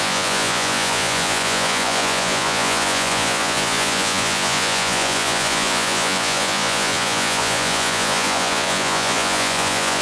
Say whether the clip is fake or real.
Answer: fake